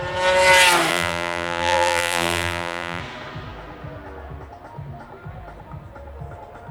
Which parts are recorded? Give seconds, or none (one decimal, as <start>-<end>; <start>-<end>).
0.0-0.9; 3.0-6.7